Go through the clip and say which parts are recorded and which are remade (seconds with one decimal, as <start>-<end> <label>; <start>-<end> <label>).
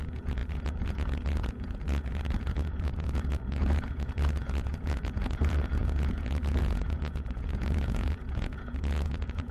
0.0-9.5 remade